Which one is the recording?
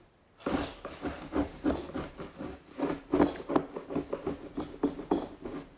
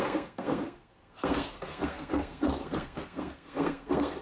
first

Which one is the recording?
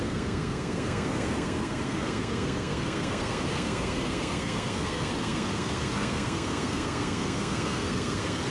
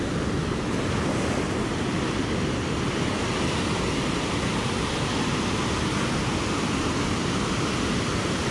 second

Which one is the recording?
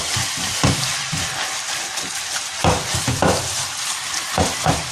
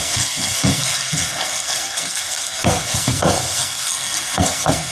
first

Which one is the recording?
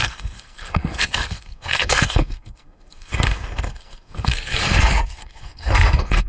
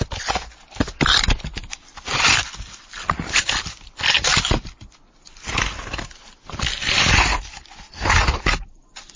second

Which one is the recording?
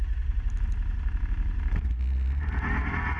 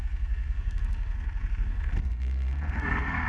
first